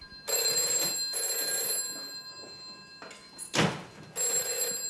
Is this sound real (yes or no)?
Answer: yes